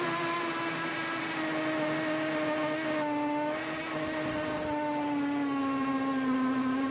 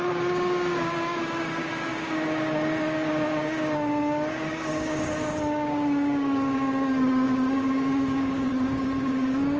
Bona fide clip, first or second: first